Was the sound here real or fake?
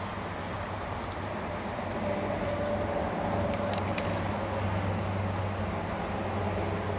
real